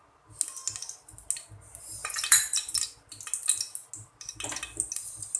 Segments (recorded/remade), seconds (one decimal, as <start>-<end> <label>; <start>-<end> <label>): 0.0-2.0 recorded; 2.0-2.7 remade; 2.7-5.4 recorded